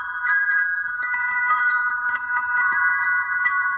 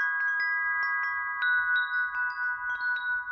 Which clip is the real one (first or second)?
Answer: second